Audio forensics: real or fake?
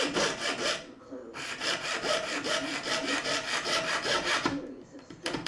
fake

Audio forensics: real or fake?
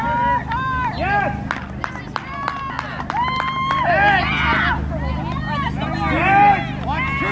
real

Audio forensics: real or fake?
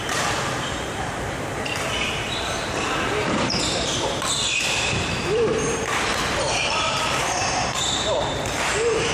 fake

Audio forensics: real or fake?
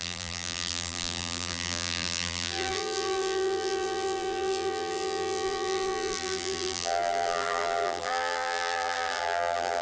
fake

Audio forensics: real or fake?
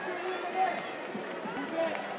real